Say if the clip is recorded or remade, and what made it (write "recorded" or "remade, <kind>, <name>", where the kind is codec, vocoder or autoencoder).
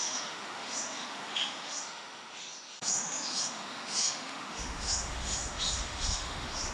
remade, autoencoder, DAC-VAE